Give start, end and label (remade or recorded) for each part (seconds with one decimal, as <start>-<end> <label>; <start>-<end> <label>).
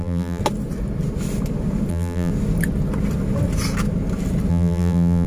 0.0-0.4 remade; 0.4-1.9 recorded; 1.9-2.3 remade; 2.3-4.5 recorded; 4.5-5.3 remade